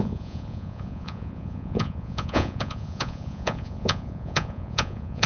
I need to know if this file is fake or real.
fake